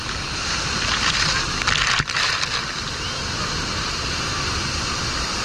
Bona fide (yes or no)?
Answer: yes